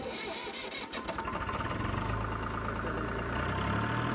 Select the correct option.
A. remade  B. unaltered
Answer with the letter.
B